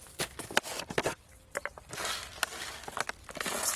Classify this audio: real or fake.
real